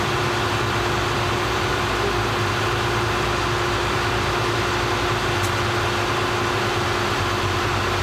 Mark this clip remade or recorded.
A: recorded